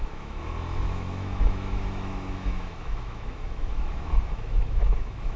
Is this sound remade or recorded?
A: remade